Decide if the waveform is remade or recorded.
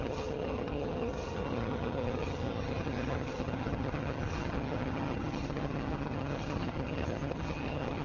remade